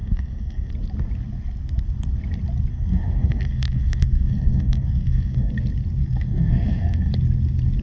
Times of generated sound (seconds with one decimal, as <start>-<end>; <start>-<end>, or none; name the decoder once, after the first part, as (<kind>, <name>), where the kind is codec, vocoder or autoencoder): 0.0-0.7 (codec, SNAC); 2.7-5.5; 6.0-7.1